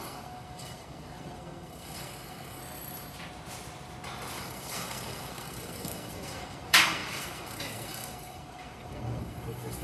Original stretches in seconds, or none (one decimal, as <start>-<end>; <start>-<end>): 2.6-4.4